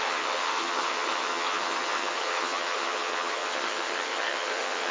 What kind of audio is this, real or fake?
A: fake